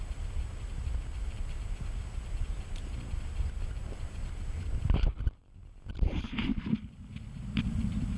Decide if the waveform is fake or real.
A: real